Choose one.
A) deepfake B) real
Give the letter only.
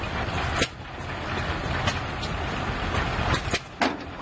B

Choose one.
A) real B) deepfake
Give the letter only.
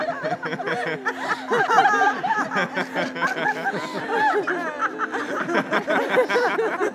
A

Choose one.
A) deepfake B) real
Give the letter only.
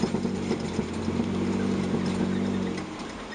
B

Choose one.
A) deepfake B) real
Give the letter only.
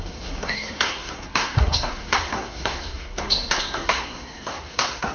A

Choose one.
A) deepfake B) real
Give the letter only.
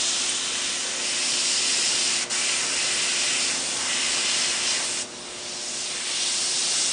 B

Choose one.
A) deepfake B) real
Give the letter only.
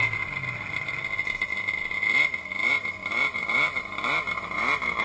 B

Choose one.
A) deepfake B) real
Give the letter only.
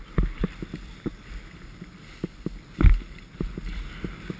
B